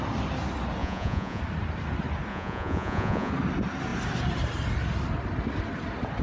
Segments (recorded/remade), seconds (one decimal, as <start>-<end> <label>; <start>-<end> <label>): 0.0-0.8 recorded; 0.8-1.4 remade; 1.4-2.3 recorded; 2.3-3.3 remade; 3.3-6.2 recorded